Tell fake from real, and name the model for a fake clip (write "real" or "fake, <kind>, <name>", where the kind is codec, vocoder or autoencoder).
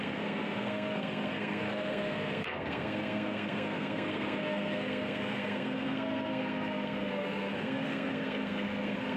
fake, codec, SNAC